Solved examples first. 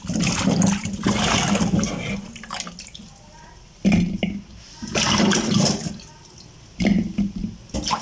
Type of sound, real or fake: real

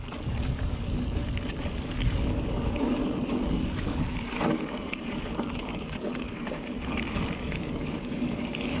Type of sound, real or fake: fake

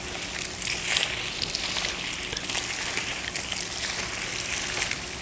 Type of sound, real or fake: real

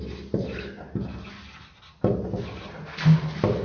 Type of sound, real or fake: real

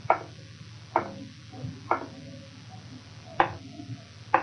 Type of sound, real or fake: real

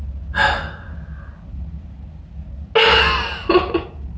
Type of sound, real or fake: real